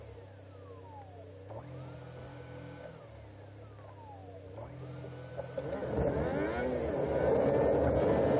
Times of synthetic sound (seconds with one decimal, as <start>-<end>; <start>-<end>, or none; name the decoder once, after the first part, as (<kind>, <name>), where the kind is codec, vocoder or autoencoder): 2.3-3.0 (codec, DAC)